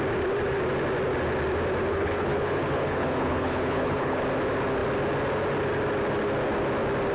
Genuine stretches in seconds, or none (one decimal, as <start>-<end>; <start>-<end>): 0.0-1.9; 4.2-7.1